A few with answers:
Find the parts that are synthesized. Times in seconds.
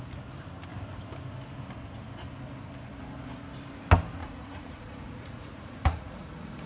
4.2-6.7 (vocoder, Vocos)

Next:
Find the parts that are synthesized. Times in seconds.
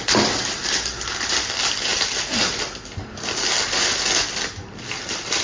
none